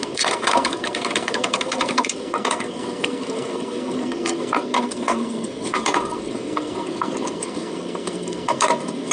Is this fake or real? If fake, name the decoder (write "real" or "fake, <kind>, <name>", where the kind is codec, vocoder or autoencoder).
fake, codec, SNAC